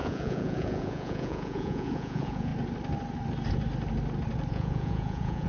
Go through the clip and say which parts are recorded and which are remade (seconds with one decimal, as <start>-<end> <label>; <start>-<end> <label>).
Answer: 0.0-2.5 remade; 2.5-4.5 recorded; 4.5-5.5 remade